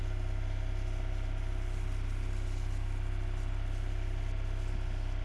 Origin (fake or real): real